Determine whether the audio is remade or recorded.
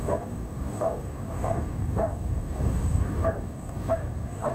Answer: remade